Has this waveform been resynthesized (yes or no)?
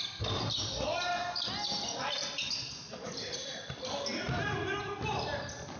no